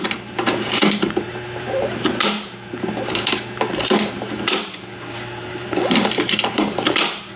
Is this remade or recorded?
remade